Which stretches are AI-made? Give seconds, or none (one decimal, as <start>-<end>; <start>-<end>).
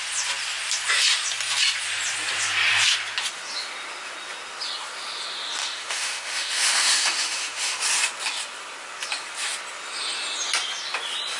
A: 5.6-7.8